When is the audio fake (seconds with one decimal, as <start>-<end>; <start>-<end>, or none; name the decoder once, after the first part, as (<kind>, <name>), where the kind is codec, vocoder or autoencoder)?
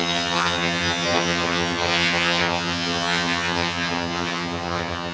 0.0-5.1 (vocoder, HiFi-GAN)